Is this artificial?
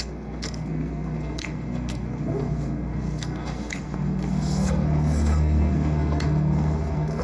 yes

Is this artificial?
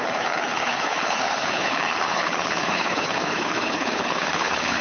yes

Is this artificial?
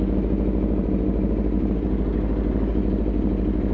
no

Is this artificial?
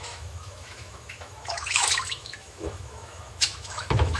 yes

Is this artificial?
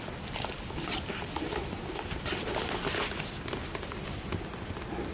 no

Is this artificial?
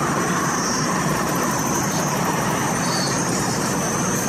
yes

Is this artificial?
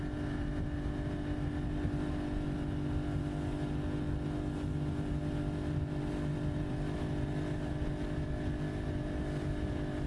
no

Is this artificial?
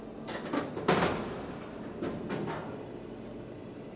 no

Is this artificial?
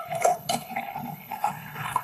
yes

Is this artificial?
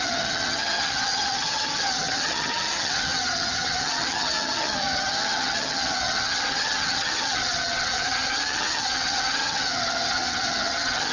yes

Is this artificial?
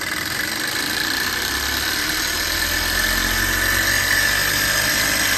no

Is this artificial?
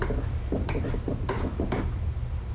no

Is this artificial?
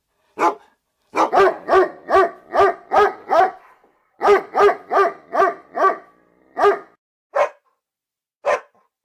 no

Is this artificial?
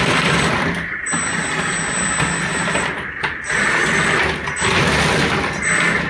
no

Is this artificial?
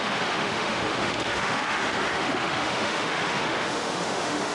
yes